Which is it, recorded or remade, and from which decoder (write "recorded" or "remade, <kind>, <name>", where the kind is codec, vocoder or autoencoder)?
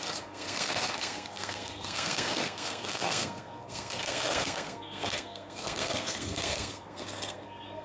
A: remade, codec, SNAC